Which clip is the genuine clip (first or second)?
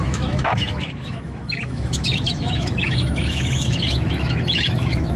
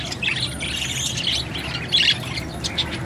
second